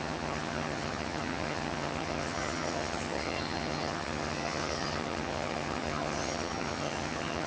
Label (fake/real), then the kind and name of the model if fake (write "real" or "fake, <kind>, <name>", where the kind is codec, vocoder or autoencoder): fake, vocoder, HiFi-GAN